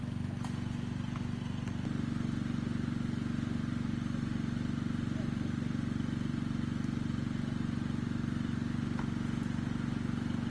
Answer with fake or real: real